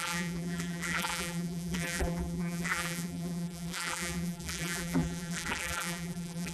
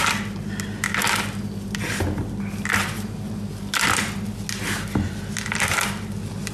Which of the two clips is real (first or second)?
second